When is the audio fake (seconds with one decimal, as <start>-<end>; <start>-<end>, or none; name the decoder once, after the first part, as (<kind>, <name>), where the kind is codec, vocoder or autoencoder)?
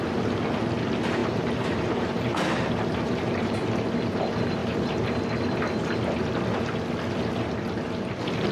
1.2-3.8 (vocoder, BigVGAN v2); 4.6-5.2